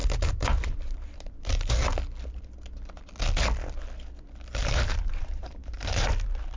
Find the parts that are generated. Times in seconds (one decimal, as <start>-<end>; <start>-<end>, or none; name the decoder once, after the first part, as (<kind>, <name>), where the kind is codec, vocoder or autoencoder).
0.0-1.7 (vocoder, BigVGAN v2); 4.6-6.6